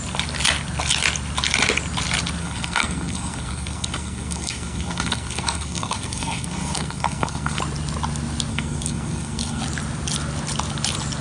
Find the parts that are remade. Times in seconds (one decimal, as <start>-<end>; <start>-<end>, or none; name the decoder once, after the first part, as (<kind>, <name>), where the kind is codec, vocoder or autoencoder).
2.4-7.6 (codec, SNAC); 8.5-9.6